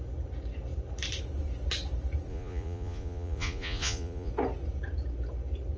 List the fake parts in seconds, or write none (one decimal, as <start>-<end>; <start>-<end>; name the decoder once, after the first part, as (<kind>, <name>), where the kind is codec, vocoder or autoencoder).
2.3-4.3 (vocoder, Vocos)